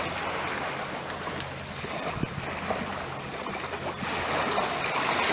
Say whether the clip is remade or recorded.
recorded